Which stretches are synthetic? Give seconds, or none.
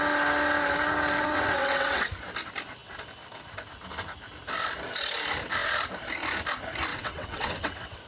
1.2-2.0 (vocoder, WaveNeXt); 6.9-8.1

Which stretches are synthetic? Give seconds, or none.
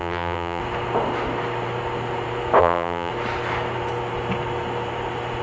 0.0-0.6 (vocoder, BigVGAN v2); 2.6-3.1